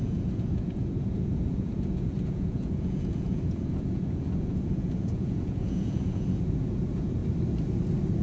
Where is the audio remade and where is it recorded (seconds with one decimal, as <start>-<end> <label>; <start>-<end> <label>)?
0.0-7.2 remade; 7.2-8.2 recorded